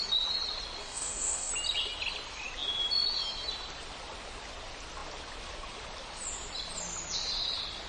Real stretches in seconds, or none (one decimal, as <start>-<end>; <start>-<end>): 0.0-0.8; 1.5-7.9